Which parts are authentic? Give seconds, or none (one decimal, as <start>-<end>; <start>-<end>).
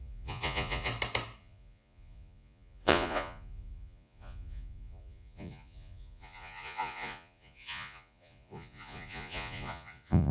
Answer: 0.9-1.4